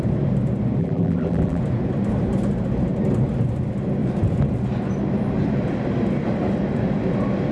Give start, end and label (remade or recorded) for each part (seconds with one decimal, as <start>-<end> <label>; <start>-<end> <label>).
0.0-0.8 recorded; 0.8-1.6 remade; 1.6-7.5 recorded